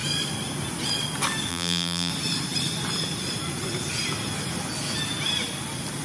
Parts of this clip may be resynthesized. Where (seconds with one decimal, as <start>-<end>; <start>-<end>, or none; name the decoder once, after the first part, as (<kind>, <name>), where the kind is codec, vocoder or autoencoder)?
1.5-2.1 (vocoder, BigVGAN v2)